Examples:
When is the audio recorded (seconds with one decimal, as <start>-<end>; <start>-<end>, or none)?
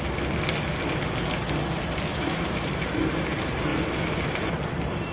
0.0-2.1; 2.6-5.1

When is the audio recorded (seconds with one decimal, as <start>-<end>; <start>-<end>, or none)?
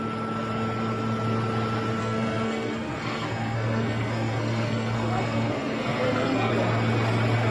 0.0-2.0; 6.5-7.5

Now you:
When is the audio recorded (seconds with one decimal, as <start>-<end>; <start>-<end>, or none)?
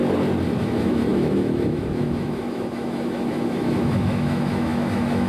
0.0-0.6